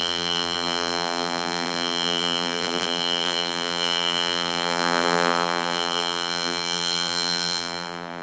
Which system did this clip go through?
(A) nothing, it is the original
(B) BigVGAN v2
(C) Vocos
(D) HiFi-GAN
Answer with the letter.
B